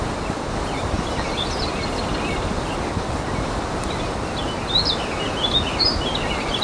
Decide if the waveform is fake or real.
real